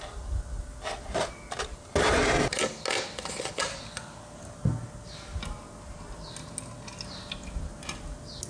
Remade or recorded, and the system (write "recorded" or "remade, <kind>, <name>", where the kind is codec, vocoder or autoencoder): recorded